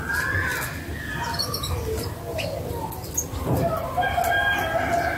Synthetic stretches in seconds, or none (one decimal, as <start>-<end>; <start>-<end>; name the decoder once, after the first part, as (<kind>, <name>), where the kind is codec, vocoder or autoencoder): none